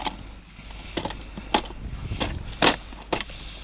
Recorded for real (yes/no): yes